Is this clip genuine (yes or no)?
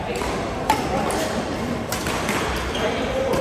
no